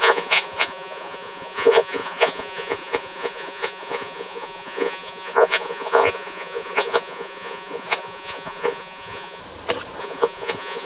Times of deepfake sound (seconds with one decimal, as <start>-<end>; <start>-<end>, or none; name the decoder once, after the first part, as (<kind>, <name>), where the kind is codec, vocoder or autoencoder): 0.0-9.4 (vocoder, Vocos); 10.0-10.9